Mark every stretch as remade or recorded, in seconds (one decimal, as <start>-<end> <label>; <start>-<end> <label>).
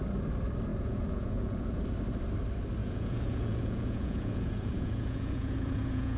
0.0-0.7 recorded; 0.7-1.8 remade; 1.8-2.8 recorded; 2.8-6.2 remade